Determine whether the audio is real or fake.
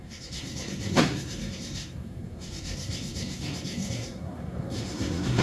fake